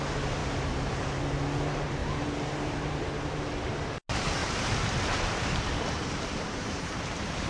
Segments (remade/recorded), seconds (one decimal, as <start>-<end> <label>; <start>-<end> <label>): 0.0-2.0 recorded; 2.0-2.9 remade; 2.9-4.4 recorded; 4.4-7.0 remade; 7.0-7.5 recorded